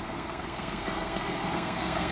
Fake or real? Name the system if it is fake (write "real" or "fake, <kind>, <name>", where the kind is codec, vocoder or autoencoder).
fake, codec, SNAC